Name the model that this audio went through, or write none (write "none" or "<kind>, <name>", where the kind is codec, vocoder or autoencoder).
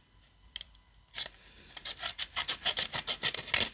none